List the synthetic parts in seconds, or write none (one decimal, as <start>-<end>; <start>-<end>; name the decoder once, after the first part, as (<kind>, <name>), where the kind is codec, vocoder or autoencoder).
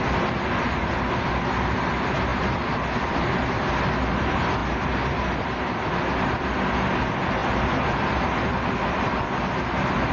none